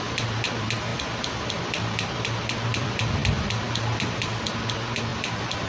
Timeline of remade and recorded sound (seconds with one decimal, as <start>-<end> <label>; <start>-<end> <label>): 0.0-0.9 recorded; 0.9-4.2 remade; 4.2-5.1 recorded; 5.1-5.7 remade